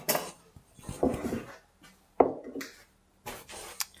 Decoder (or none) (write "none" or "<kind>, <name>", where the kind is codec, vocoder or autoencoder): none